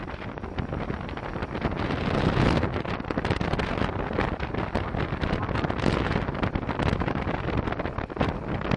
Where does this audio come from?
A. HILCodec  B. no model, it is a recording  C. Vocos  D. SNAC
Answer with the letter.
B